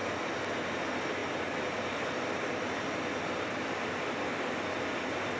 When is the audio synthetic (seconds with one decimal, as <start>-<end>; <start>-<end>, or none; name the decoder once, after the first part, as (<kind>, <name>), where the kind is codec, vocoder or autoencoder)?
none